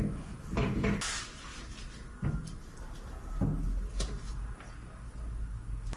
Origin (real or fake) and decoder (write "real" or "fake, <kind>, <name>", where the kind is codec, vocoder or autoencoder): real